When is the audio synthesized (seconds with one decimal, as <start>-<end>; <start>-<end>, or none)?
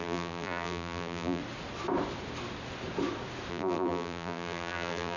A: 0.0-1.4; 3.5-5.2